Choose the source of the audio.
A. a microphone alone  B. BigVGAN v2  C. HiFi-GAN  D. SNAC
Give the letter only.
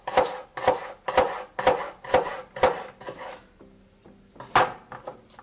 A